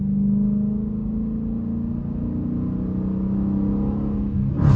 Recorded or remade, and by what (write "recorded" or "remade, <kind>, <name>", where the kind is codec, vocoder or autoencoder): recorded